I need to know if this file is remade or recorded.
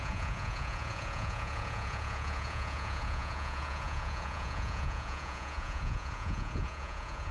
remade